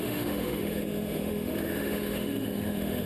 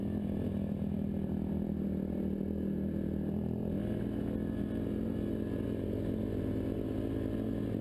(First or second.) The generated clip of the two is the first